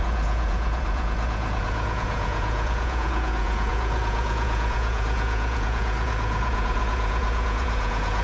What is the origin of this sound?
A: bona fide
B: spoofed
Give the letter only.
B